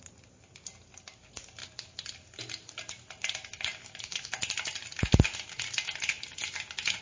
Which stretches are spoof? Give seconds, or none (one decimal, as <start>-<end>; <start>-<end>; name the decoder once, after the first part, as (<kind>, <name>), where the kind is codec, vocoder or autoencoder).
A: none